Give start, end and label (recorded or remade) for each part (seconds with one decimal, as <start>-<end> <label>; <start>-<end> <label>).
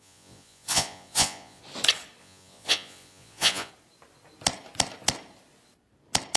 0.0-1.6 remade; 1.6-2.2 recorded; 2.2-3.7 remade; 3.7-6.4 recorded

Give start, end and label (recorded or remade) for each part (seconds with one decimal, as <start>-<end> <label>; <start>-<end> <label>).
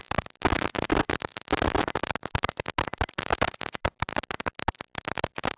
0.0-5.6 recorded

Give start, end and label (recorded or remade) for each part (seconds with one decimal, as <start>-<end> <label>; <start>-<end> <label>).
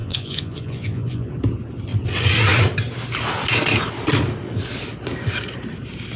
0.0-1.3 remade; 1.3-6.2 recorded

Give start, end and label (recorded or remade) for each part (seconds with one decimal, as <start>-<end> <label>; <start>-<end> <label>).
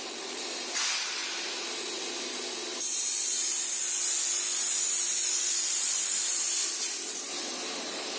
0.0-8.2 recorded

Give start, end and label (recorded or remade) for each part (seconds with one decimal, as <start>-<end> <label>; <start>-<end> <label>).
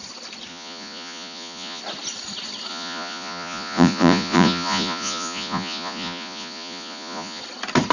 0.0-0.5 recorded; 0.5-1.8 remade; 1.8-2.7 recorded; 2.7-7.4 remade; 7.4-7.9 recorded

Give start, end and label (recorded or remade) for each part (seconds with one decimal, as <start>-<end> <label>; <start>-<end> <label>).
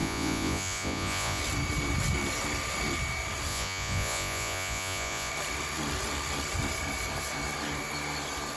0.0-1.4 remade; 1.4-3.5 recorded; 3.5-5.3 remade; 5.3-8.6 recorded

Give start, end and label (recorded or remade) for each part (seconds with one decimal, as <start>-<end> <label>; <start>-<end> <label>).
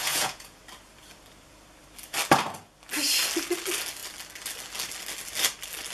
0.0-0.6 remade; 0.6-5.9 recorded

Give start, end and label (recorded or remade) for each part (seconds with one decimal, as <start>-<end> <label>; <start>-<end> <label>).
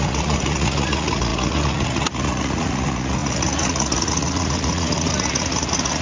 0.0-6.0 remade